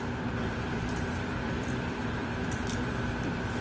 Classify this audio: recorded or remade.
remade